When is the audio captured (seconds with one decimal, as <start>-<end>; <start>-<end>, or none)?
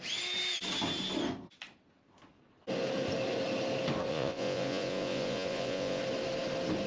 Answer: 0.0-4.1; 6.0-6.9